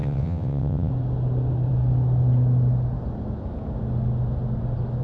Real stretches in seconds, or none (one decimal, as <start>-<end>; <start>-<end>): 0.9-5.0